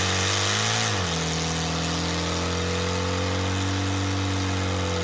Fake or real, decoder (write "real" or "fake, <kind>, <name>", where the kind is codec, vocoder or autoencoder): real